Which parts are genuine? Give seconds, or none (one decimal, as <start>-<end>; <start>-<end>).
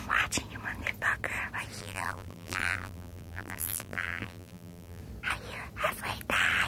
0.0-1.8; 5.0-6.7